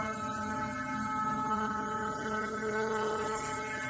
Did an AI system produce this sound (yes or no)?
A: yes